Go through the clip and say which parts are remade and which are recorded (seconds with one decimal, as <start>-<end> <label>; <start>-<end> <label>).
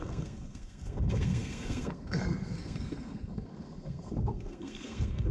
0.0-5.3 remade